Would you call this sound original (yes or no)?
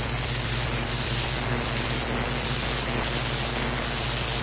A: yes